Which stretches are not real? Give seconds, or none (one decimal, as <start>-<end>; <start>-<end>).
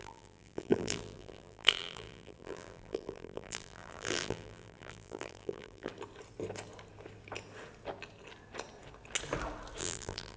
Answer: 0.0-5.9; 9.8-10.4